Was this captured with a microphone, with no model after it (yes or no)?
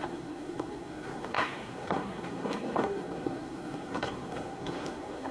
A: no